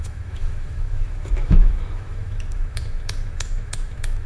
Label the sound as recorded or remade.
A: remade